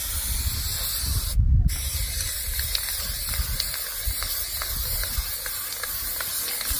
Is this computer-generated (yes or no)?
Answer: no